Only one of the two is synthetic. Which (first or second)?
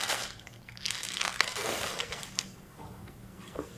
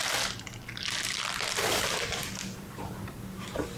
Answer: first